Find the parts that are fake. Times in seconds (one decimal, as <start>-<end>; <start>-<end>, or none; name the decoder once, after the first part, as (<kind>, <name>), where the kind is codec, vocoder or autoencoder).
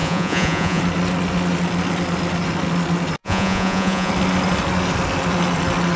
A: 0.0-0.8 (vocoder, Vocos); 3.2-4.1